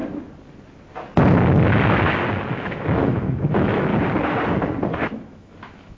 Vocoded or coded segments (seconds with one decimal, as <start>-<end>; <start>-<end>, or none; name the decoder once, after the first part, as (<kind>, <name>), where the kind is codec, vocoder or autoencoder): 2.5-3.9 (autoencoder, DAC-VAE); 5.1-6.0